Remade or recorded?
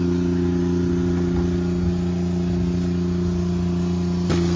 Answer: recorded